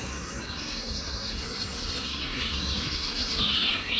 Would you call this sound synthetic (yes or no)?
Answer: yes